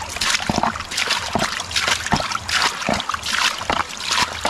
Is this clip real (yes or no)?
yes